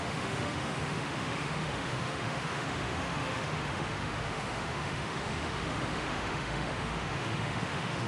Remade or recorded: remade